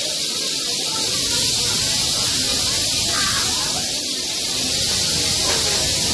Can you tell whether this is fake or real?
real